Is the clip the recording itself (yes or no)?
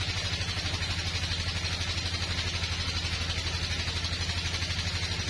yes